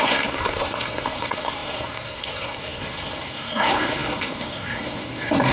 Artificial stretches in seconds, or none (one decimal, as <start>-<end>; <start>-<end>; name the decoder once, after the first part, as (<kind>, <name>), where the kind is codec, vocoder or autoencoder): 0.0-5.5 (codec, SNAC)